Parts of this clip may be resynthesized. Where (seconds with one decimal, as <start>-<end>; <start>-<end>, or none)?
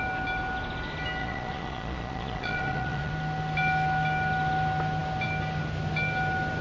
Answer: 1.2-3.1